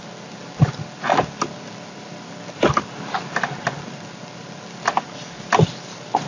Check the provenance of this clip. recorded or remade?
recorded